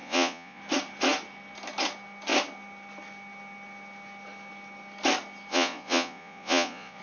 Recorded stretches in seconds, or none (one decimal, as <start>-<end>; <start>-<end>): 0.6-5.5